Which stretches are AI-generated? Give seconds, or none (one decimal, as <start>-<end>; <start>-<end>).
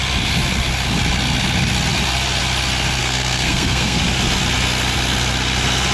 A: 3.0-4.0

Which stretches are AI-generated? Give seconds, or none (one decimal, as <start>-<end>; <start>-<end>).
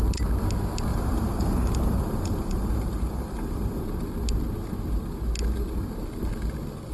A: 0.9-3.8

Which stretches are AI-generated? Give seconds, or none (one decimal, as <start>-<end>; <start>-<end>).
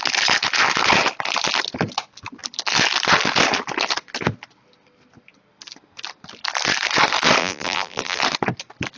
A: 7.4-8.2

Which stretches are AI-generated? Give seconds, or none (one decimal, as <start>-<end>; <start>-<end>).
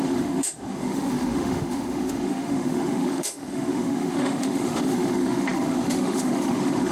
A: 0.0-6.9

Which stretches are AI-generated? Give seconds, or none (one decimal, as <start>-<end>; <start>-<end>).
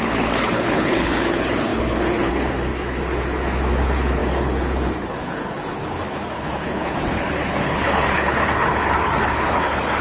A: 0.0-10.0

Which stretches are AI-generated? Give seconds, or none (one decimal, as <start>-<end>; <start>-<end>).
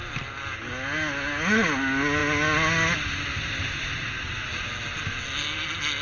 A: none